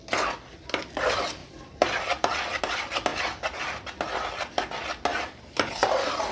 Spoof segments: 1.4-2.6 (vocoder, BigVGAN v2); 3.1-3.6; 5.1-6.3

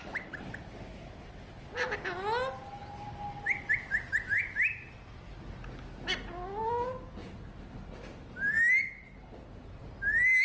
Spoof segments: 0.0-0.8 (vocoder, BigVGAN v2); 7.2-7.9; 9.2-9.9

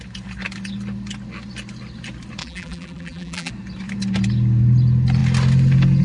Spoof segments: 2.4-3.5 (vocoder, BigVGAN v2)

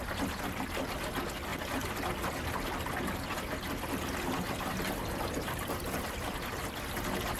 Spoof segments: 0.0-7.4 (vocoder, BigVGAN v2)